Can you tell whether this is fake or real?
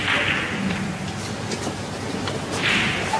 real